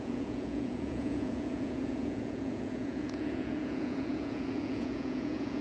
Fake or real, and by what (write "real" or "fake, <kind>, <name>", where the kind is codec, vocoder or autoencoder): fake, vocoder, Vocos